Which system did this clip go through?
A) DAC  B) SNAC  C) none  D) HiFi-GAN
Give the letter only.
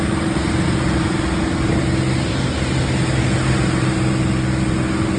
C